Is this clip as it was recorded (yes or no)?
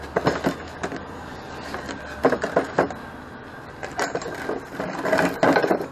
yes